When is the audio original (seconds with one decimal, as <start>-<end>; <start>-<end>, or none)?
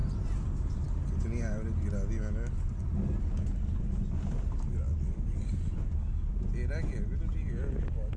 0.0-8.2